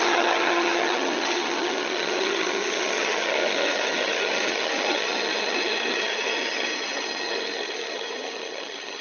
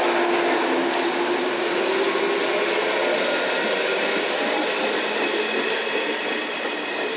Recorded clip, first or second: second